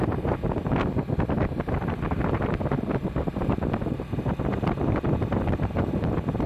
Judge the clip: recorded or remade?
recorded